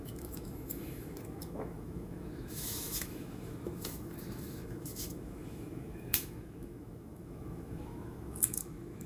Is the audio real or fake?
fake